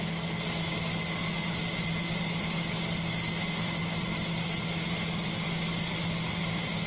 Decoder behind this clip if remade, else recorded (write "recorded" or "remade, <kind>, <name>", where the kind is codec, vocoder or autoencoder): recorded